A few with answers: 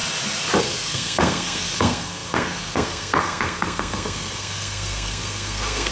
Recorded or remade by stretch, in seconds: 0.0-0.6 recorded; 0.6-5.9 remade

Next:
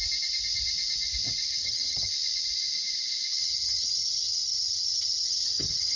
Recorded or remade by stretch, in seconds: 0.0-1.6 recorded; 1.6-2.1 remade; 2.1-3.4 recorded; 3.4-6.0 remade

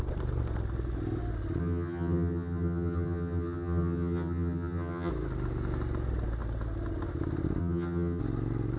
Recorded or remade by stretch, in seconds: 0.0-1.6 recorded; 1.6-5.1 remade; 5.1-7.6 recorded; 7.6-8.2 remade; 8.2-8.8 recorded

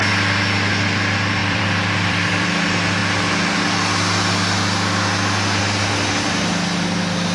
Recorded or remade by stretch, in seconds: 0.0-1.4 recorded; 1.4-2.5 remade; 2.5-7.3 recorded

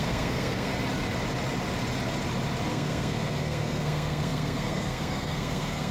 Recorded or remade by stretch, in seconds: 0.0-0.7 remade; 0.7-2.7 recorded; 2.7-5.9 remade

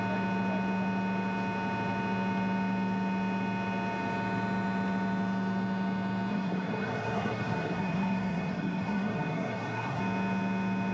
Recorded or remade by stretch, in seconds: 0.0-6.3 recorded; 6.3-10.0 remade; 10.0-10.9 recorded

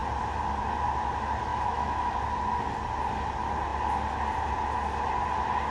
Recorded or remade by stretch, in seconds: 0.0-1.5 recorded; 1.5-2.2 remade; 2.2-5.7 recorded